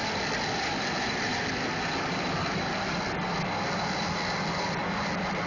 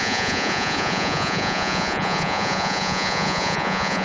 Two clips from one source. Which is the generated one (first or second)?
second